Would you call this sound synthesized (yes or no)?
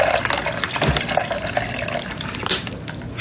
no